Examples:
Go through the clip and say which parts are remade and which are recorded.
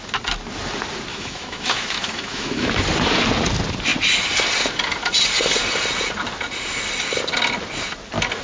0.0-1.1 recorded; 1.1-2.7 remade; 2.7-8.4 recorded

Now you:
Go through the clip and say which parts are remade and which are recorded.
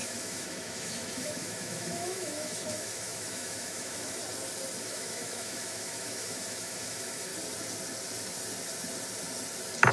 0.0-4.2 remade; 4.2-4.8 recorded; 4.8-7.3 remade; 7.3-9.9 recorded